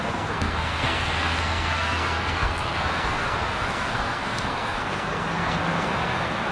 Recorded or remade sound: remade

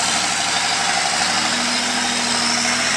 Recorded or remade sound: recorded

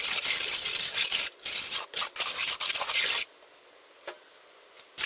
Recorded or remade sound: recorded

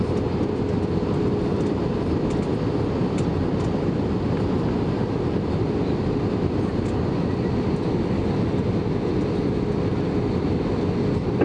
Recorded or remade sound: recorded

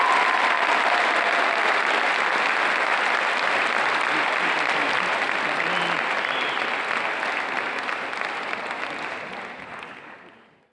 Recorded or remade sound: recorded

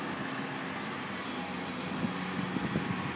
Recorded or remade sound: recorded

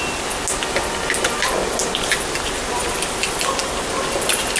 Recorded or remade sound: recorded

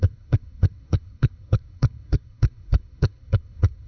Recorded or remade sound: remade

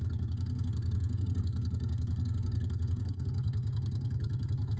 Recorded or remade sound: remade